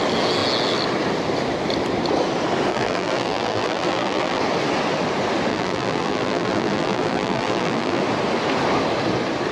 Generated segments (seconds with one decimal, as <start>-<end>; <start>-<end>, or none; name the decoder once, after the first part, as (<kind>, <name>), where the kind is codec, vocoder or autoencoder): 2.7-4.4 (vocoder, BigVGAN v2); 5.5-8.0